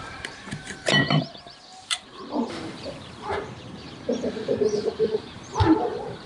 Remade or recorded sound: remade